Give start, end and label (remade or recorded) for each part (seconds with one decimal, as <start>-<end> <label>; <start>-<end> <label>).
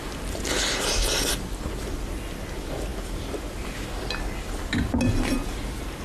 0.0-6.0 recorded